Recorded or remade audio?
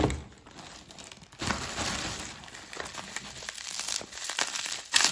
recorded